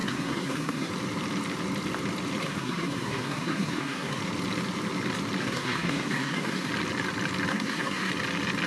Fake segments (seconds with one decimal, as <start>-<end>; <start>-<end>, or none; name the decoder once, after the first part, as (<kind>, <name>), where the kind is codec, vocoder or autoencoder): 0.0-0.9 (codec, SNAC); 2.4-4.2; 5.4-6.7; 7.5-8.1